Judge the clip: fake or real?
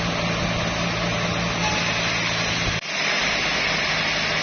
real